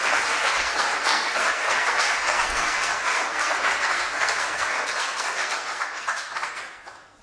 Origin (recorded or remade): remade